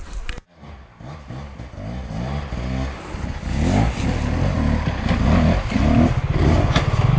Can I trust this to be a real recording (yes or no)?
yes